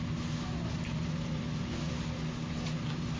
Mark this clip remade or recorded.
recorded